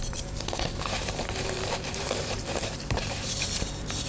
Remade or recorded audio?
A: remade